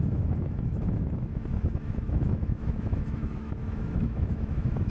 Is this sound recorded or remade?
remade